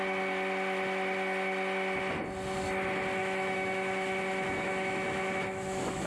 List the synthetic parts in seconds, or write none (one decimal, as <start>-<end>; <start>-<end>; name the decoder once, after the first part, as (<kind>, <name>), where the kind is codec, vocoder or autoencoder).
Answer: 3.2-6.1 (autoencoder, DAC-VAE)

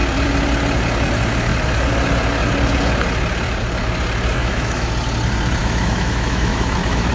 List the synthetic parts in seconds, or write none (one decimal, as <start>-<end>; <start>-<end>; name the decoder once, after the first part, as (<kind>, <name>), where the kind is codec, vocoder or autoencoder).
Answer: 4.4-4.9 (autoencoder, DAC-VAE); 5.6-7.1